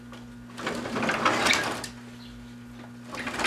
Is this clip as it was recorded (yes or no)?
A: yes